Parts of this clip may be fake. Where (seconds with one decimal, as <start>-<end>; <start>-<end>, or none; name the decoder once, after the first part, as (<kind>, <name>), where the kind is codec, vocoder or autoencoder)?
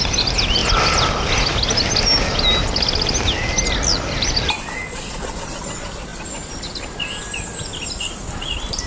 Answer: none